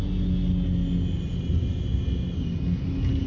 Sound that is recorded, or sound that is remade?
recorded